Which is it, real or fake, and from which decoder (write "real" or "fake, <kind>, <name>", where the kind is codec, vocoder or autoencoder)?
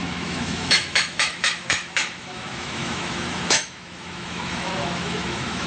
fake, autoencoder, DAC-VAE